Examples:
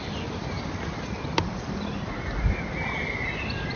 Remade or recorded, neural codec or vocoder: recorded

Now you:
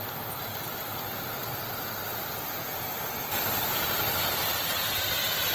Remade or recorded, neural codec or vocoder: recorded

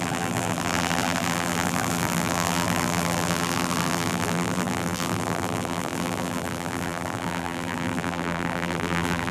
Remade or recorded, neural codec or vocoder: remade, vocoder, BigVGAN v2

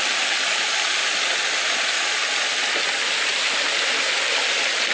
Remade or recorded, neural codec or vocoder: recorded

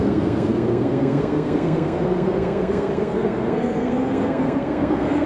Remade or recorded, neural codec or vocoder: remade, codec, SNAC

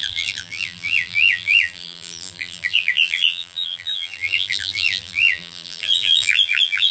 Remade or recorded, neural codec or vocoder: remade, vocoder, BigVGAN v2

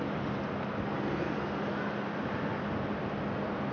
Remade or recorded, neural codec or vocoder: recorded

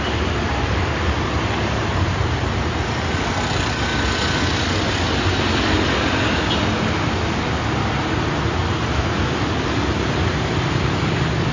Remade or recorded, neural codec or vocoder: recorded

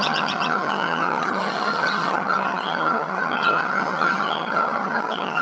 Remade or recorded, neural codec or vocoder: remade, vocoder, HiFi-GAN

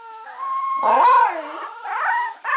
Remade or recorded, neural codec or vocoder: recorded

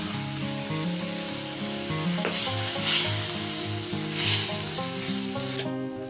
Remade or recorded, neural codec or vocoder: recorded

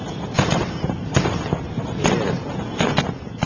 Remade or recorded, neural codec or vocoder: recorded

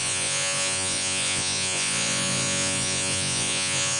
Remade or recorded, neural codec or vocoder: remade, vocoder, Vocos